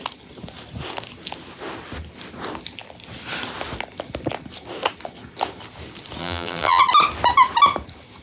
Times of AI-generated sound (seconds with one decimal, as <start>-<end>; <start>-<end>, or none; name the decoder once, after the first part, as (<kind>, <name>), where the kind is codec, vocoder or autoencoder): 6.2-6.8 (vocoder, BigVGAN v2)